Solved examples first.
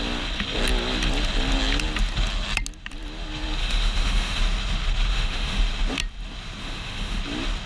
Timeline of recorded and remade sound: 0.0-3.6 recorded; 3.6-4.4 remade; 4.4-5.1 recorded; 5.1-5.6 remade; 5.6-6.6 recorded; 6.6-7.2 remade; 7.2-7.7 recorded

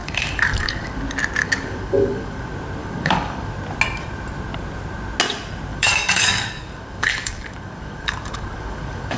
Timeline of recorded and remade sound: 0.0-1.0 remade; 1.0-1.4 recorded; 1.4-2.4 remade; 2.4-2.8 recorded; 2.8-3.5 remade; 3.5-5.7 recorded; 5.7-9.2 remade

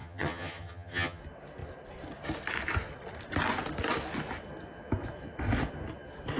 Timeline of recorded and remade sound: 0.0-1.2 remade; 1.2-6.4 recorded

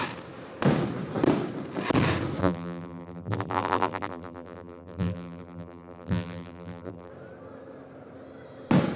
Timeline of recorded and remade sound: 0.0-2.4 recorded; 2.4-7.1 remade; 7.1-9.0 recorded